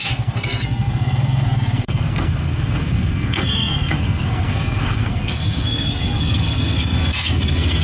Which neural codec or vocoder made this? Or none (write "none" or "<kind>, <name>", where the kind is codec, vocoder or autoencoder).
codec, SNAC